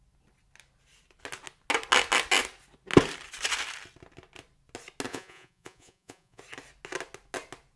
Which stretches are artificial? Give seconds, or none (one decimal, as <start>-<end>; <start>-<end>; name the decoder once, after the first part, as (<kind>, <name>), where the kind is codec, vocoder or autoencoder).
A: 5.1-6.4 (vocoder, Vocos)